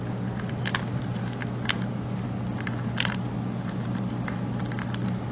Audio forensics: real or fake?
real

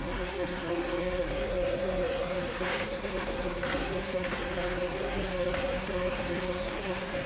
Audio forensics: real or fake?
fake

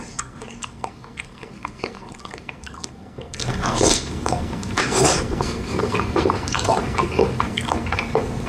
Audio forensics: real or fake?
fake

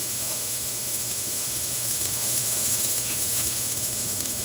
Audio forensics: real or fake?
fake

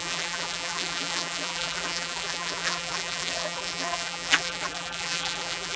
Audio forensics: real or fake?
fake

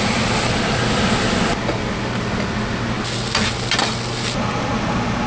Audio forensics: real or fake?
real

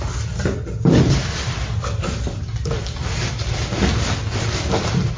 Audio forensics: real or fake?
real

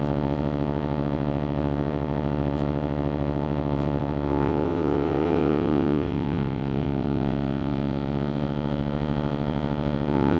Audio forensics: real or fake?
fake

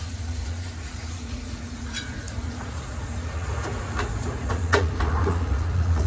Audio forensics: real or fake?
fake